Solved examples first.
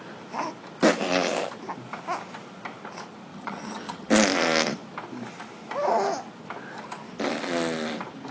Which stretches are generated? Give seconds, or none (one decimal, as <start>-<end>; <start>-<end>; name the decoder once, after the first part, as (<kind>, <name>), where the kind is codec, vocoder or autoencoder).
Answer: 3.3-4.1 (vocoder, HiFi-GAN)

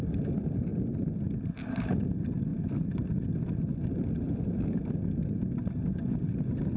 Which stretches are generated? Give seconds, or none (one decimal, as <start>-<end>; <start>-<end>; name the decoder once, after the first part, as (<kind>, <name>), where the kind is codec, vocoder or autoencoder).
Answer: none

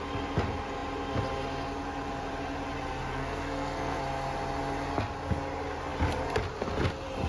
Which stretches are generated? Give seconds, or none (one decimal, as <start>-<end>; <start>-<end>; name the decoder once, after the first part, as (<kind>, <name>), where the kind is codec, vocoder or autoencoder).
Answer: 3.1-4.0 (codec, SNAC)

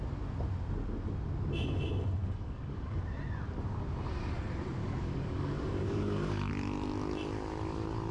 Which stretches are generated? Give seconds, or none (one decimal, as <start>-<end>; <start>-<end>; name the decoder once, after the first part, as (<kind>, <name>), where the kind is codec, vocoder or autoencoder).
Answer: 2.2-3.0 (codec, DAC); 4.8-6.5

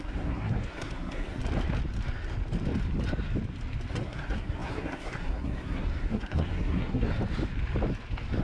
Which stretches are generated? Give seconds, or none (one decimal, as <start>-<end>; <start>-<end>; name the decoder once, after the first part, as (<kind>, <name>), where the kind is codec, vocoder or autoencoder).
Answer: 0.0-1.4 (codec, SNAC); 3.9-7.1